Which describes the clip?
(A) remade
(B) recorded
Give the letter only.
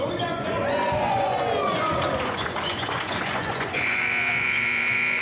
A